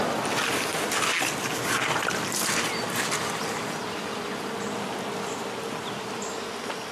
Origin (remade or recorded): recorded